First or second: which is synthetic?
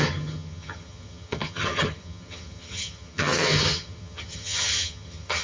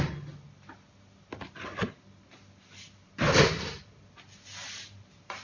first